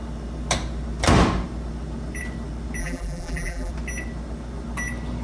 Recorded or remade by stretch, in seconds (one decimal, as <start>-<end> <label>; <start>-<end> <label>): 0.0-2.8 recorded; 2.8-3.7 remade; 3.7-5.2 recorded